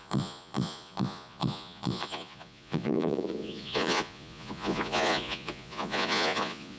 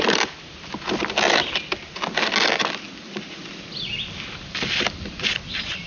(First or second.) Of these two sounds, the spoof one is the first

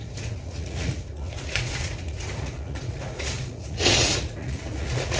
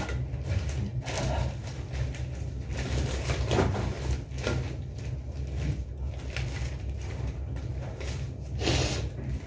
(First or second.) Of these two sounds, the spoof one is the first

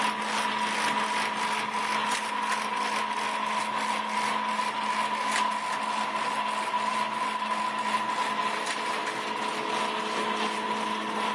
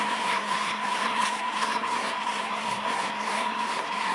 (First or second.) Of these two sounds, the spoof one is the second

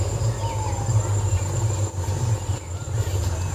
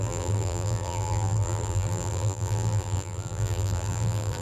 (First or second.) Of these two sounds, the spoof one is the second